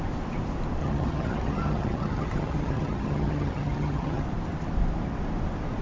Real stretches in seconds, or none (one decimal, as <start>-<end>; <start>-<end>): 0.0-0.8; 4.2-5.8

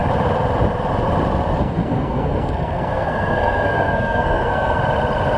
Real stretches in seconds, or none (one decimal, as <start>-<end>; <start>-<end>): 0.0-1.6; 4.8-5.4

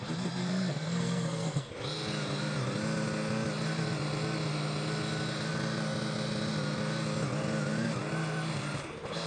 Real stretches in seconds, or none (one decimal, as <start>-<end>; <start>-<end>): 0.0-0.4; 1.7-9.3

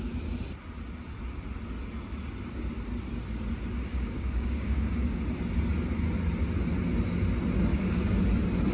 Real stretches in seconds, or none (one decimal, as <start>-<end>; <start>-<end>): 0.0-3.9; 5.2-7.7; 8.2-8.7

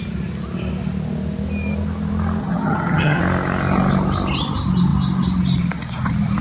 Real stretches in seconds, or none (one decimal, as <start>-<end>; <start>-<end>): 0.0-2.4; 3.2-6.4

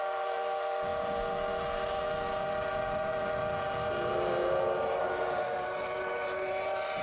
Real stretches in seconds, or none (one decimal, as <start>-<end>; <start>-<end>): 0.0-7.0

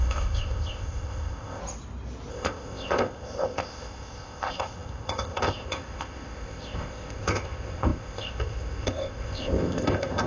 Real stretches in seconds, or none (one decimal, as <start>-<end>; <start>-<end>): 1.6-2.3